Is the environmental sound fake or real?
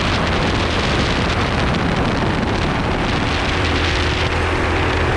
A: real